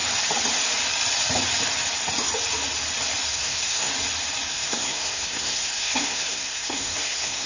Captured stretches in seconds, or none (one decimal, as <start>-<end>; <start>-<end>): 0.0-3.3; 3.9-4.5